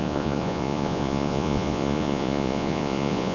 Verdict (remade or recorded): remade